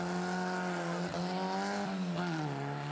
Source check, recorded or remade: recorded